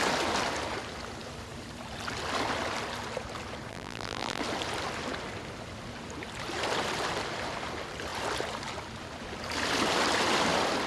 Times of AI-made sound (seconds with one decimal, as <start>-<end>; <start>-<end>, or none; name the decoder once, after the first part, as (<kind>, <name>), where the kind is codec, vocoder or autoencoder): 3.7-4.4 (vocoder, BigVGAN v2)